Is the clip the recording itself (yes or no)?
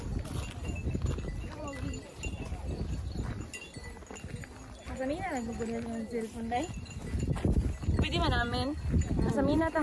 yes